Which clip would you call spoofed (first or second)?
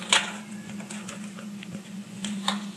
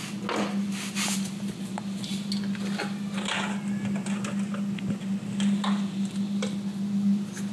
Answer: first